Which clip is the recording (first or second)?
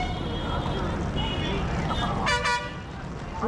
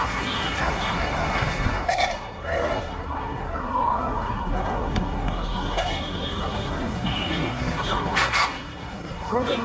first